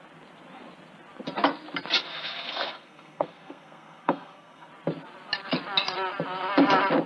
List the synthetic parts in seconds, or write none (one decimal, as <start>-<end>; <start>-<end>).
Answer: 2.0-4.7